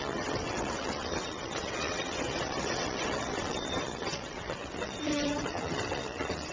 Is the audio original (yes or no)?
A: no